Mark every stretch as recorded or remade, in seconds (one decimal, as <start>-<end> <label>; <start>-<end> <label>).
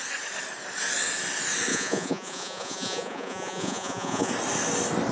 0.0-1.7 recorded; 1.7-4.3 remade; 4.3-5.1 recorded